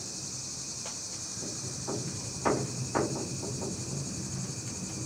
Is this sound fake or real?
fake